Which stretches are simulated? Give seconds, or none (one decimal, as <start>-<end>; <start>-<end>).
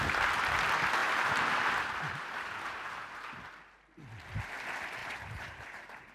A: 1.0-2.7; 5.0-6.1